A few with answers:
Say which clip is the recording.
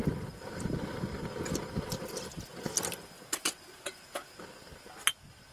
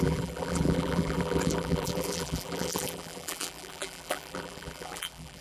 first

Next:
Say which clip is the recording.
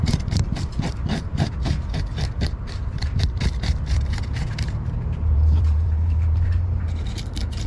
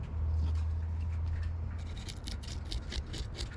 second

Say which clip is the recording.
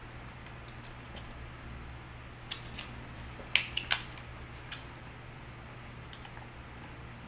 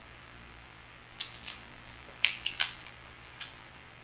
first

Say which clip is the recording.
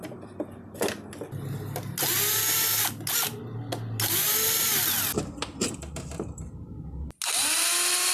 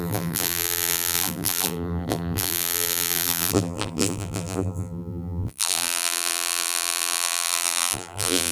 first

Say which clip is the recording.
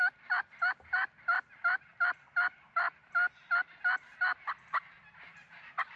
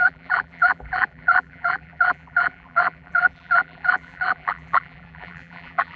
first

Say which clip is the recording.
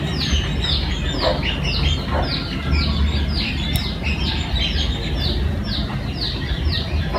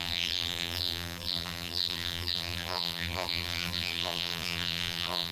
first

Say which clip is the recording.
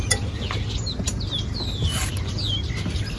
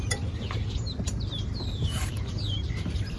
first